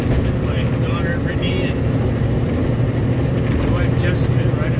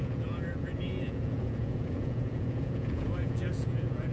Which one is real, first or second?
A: first